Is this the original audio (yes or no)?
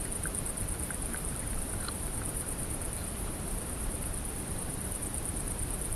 no